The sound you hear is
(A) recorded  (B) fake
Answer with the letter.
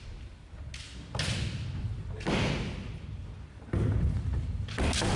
A